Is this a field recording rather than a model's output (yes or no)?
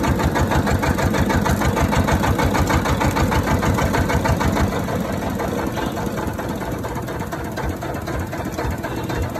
yes